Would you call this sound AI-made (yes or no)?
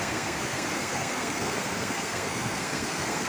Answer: yes